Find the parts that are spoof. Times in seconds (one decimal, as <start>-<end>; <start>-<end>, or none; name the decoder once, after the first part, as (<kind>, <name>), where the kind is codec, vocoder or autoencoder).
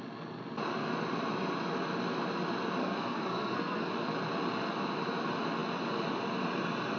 2.8-3.9 (codec, SNAC)